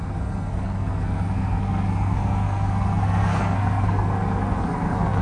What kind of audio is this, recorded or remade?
remade